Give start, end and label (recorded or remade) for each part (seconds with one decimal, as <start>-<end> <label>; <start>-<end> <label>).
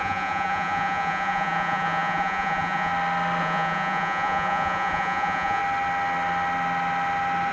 0.0-2.9 remade; 2.9-3.4 recorded; 3.4-5.6 remade; 5.6-7.5 recorded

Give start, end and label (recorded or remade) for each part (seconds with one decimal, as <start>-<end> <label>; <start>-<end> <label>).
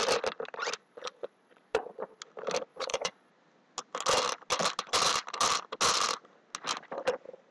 0.0-0.8 recorded; 0.8-2.2 remade; 2.2-2.7 recorded; 2.7-3.3 remade; 3.3-7.5 recorded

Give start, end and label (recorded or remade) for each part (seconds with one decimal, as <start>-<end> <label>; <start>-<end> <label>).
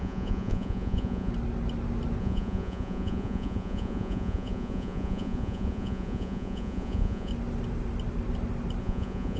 0.0-1.3 remade; 1.3-2.2 recorded; 2.2-7.3 remade; 7.3-8.8 recorded; 8.8-9.4 remade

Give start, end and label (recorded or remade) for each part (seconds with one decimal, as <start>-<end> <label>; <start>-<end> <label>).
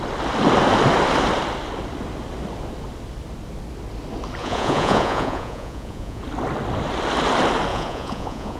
0.0-4.4 recorded; 4.4-6.2 remade; 6.2-7.7 recorded; 7.7-8.6 remade